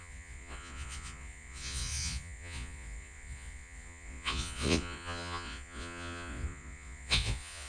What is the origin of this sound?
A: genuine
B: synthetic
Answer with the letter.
B